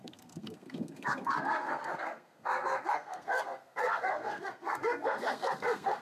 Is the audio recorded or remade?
remade